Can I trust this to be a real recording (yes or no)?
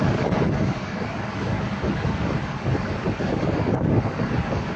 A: no